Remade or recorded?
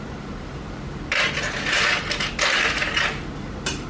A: recorded